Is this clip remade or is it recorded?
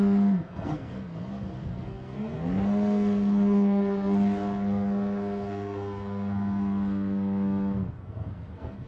remade